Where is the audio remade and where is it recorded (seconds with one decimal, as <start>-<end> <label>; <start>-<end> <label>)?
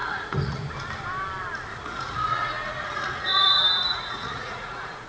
0.0-0.6 remade; 0.6-1.7 recorded; 1.7-5.1 remade